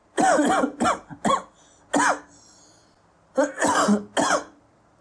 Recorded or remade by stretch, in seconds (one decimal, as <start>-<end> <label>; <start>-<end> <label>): 0.0-5.0 recorded